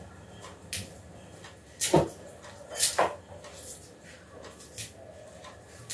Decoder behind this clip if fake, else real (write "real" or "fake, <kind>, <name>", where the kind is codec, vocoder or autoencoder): real